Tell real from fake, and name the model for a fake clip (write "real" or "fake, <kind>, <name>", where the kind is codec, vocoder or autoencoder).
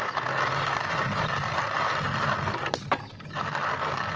real